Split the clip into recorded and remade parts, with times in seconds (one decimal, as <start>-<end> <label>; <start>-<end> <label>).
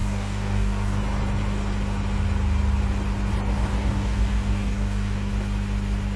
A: 0.0-1.0 remade; 1.0-3.7 recorded; 3.7-5.3 remade; 5.3-6.2 recorded